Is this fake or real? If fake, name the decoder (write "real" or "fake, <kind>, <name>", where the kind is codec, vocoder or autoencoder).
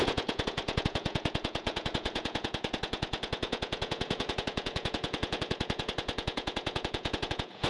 fake, vocoder, Vocos